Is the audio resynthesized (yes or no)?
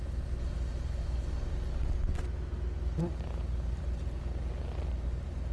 no